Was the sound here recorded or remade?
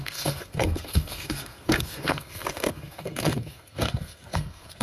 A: remade